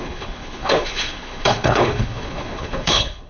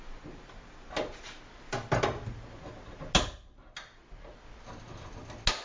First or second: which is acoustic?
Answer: second